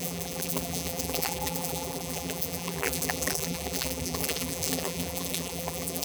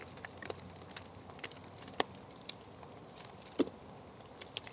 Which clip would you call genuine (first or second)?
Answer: second